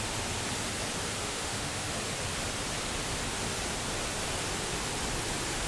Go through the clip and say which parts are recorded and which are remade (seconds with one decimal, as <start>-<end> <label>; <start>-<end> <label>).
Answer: 0.0-1.2 recorded; 1.2-1.9 remade; 1.9-5.7 recorded